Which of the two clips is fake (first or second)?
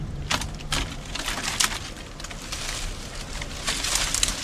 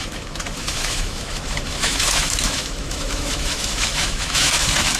second